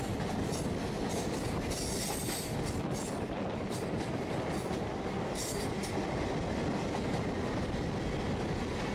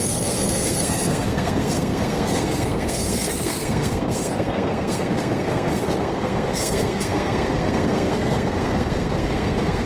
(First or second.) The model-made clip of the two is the second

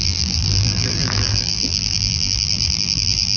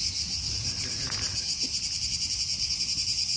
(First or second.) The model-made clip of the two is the first